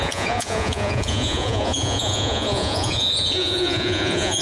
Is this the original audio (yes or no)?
no